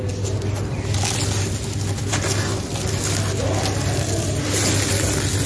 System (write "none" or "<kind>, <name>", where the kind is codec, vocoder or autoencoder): none